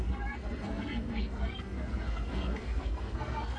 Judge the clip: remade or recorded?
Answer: remade